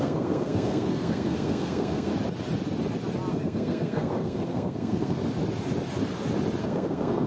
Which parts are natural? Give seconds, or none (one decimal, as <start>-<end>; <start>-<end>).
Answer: 2.1-3.3; 5.2-6.6